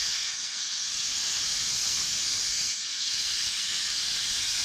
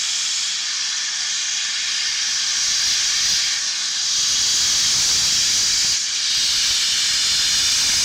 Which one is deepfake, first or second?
first